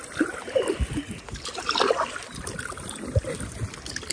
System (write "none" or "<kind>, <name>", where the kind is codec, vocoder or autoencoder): none